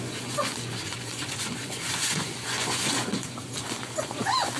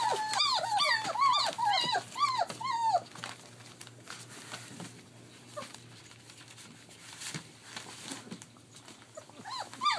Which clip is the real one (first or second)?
second